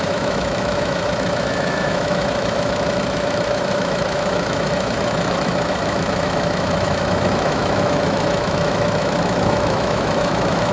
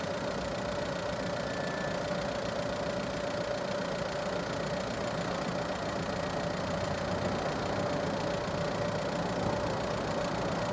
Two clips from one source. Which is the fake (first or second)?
first